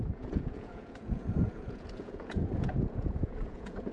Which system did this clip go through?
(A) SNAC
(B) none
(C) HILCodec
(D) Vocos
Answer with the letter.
D